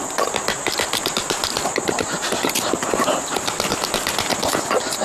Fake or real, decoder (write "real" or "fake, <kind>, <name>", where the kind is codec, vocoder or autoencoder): real